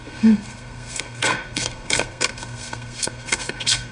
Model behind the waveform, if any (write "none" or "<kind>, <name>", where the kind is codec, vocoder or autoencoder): codec, SNAC